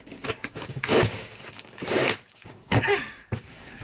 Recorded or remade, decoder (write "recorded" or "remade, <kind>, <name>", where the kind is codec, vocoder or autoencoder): remade, codec, DAC